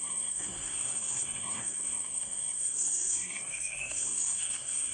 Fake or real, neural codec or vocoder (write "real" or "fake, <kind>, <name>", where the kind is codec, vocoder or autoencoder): fake, codec, SNAC